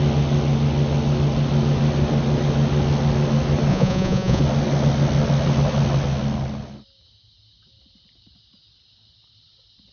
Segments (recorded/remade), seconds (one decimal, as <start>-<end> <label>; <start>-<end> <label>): 0.0-3.7 recorded; 3.7-4.4 remade; 4.4-9.9 recorded